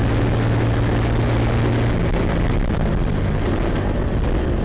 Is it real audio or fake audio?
real